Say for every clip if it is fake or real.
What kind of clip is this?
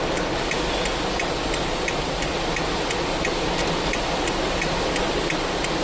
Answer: real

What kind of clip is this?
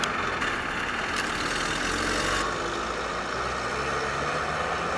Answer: real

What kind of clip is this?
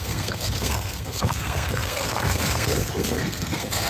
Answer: fake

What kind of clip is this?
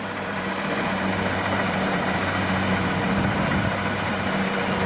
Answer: fake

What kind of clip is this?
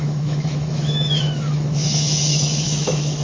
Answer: fake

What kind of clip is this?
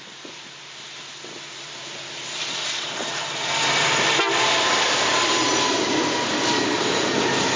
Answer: real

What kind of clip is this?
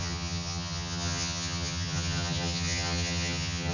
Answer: fake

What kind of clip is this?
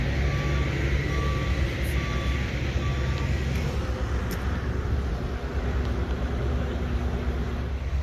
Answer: real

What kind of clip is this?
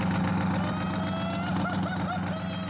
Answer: real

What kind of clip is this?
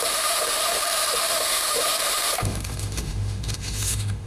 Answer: fake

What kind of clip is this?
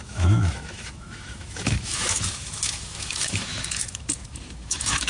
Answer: fake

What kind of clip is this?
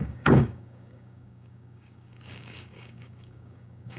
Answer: fake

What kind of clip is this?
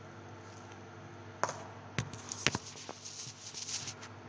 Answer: real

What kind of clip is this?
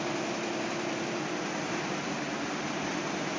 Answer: real